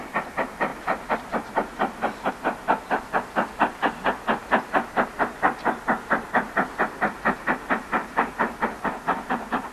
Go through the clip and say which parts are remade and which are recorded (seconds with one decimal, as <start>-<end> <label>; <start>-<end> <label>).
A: 0.0-0.7 recorded; 0.7-2.3 remade; 2.3-8.0 recorded; 8.0-9.7 remade

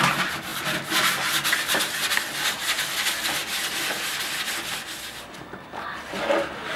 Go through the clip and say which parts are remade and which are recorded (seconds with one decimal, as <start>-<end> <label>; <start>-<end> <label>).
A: 0.0-6.8 recorded

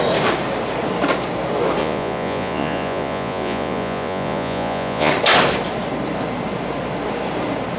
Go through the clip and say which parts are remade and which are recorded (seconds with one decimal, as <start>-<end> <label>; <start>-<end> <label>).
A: 0.0-1.8 recorded; 1.8-5.1 remade; 5.1-7.8 recorded

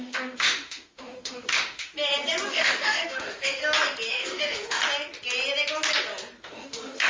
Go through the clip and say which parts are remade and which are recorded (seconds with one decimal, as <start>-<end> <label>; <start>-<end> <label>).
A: 0.0-1.9 remade; 1.9-2.5 recorded; 2.5-3.6 remade; 3.6-4.1 recorded; 4.1-4.8 remade; 4.8-6.4 recorded; 6.4-7.1 remade

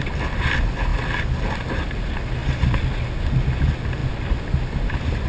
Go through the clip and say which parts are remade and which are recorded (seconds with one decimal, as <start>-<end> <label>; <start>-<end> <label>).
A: 0.0-5.3 recorded

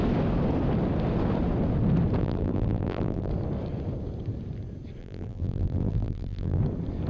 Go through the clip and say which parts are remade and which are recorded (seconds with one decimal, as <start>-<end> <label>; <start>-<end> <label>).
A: 0.0-2.2 recorded; 2.2-3.3 remade; 3.3-5.0 recorded; 5.0-6.6 remade; 6.6-7.1 recorded

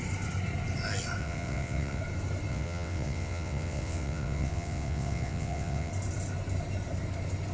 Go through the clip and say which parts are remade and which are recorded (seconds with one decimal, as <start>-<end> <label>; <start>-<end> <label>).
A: 0.0-1.2 recorded; 1.2-2.0 remade; 2.0-2.5 recorded; 2.5-5.9 remade; 5.9-7.5 recorded